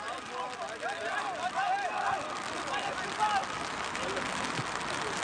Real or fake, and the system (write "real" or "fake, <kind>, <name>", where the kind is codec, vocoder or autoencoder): real